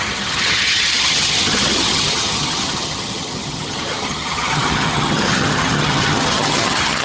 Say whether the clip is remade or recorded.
remade